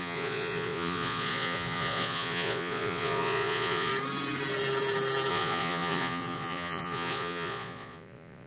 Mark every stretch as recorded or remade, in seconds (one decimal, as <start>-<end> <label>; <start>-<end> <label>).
0.0-3.9 remade; 3.9-5.3 recorded; 5.3-8.5 remade